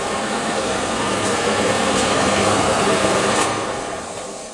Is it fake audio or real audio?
fake